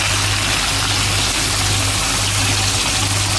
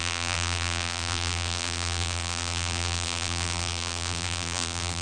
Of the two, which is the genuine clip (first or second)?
first